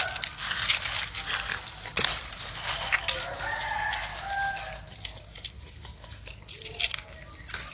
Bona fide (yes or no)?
yes